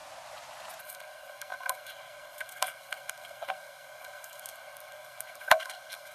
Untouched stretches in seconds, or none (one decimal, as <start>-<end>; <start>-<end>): 0.0-0.8